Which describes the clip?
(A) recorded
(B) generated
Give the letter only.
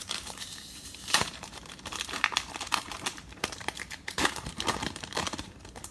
B